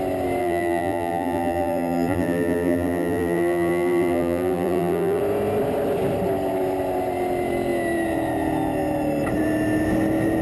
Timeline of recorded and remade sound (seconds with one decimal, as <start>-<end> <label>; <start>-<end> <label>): 0.0-0.4 recorded; 0.4-5.2 remade; 5.2-10.4 recorded